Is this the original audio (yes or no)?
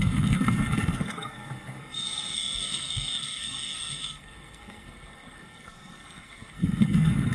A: no